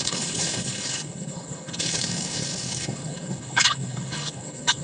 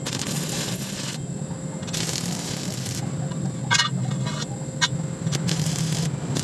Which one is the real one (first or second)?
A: second